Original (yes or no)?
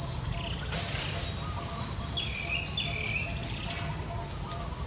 yes